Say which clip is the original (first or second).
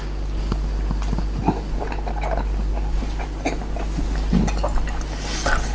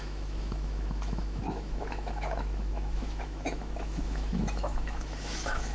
first